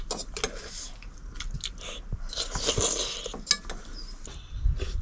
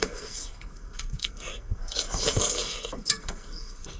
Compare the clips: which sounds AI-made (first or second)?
second